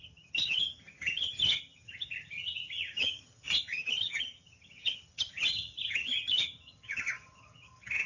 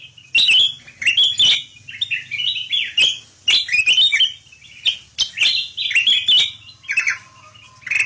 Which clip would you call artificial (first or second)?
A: first